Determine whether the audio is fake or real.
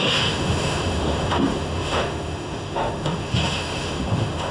fake